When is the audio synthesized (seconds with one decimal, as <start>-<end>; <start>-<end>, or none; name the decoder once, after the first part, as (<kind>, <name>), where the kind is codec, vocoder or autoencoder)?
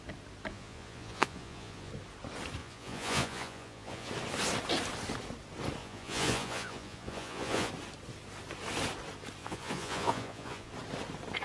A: 0.5-1.9 (vocoder, Vocos); 2.6-4.1; 5.8-7.7; 9.4-10.7